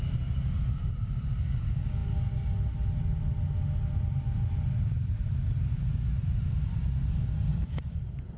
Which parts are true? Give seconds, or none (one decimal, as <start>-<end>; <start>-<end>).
0.0-7.5